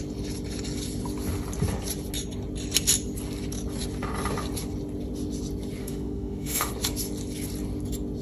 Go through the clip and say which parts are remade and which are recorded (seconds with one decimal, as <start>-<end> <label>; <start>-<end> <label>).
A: 0.0-5.8 recorded; 5.8-6.7 remade; 6.7-8.2 recorded